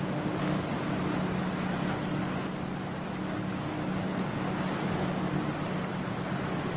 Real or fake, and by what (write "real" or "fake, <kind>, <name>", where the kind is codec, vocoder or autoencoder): real